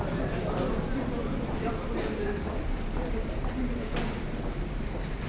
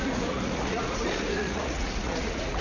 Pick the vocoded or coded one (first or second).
second